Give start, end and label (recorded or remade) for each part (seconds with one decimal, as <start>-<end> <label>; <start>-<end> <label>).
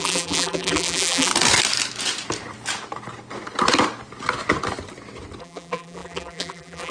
0.0-1.3 remade; 1.3-5.4 recorded; 5.4-6.9 remade